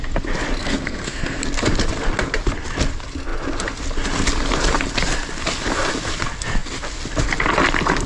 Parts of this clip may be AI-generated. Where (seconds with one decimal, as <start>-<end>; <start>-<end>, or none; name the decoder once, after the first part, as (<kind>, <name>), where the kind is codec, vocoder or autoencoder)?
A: 0.6-1.4 (codec, SNAC)